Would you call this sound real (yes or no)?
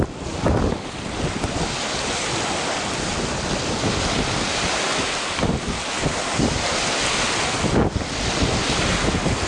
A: yes